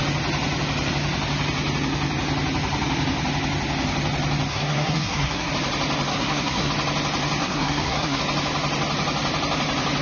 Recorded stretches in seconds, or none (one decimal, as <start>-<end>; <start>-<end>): 0.0-4.5; 5.5-6.1; 6.7-7.4; 8.2-10.0